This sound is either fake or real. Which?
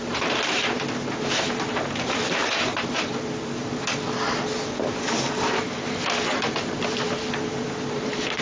fake